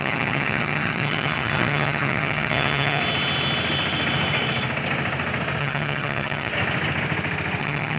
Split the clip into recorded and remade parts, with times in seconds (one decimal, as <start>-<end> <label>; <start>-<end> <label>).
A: 0.0-3.0 remade; 3.0-5.6 recorded; 5.6-6.5 remade; 6.5-7.6 recorded; 7.6-8.0 remade